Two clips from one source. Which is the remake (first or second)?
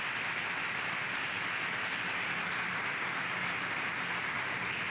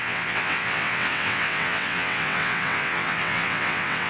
second